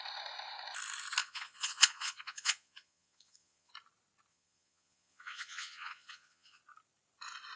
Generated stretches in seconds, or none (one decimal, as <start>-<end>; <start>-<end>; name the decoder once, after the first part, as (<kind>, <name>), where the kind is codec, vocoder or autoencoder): 1.2-3.7 (vocoder, Vocos); 4.3-6.6